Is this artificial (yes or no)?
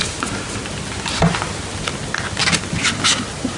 no